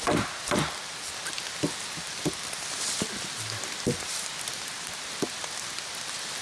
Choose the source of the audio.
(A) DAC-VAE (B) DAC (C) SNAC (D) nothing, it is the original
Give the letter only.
D